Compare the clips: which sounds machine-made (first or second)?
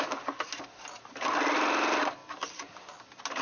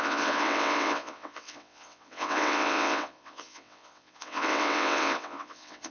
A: second